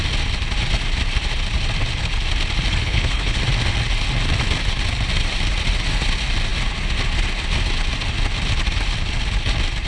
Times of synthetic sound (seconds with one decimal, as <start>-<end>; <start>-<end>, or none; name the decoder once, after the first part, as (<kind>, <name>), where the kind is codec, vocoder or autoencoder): 2.8-3.4 (codec, HILCodec)